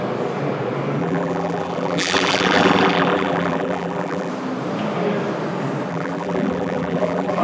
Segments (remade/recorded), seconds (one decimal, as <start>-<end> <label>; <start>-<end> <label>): 0.0-1.0 recorded; 1.0-4.3 remade; 4.3-5.9 recorded; 5.9-7.4 remade